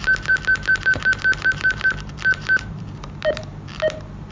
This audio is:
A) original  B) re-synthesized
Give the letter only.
B